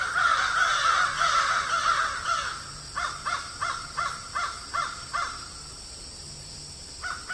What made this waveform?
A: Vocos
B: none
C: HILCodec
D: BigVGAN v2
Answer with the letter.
D